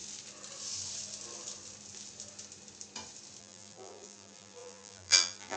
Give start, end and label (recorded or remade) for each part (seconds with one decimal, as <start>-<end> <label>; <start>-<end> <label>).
0.0-3.4 recorded; 3.4-5.6 remade